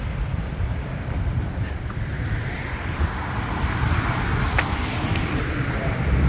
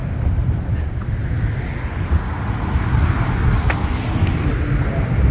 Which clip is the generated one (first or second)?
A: first